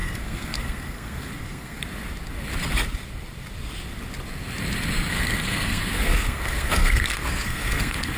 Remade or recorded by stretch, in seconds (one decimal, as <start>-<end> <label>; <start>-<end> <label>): 0.0-1.8 remade; 1.8-5.1 recorded; 5.1-8.2 remade